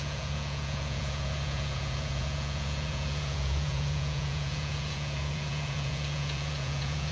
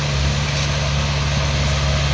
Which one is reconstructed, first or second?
first